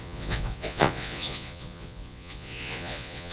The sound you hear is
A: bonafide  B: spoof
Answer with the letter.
B